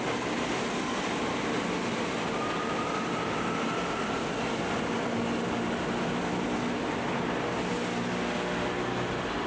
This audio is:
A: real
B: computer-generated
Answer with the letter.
A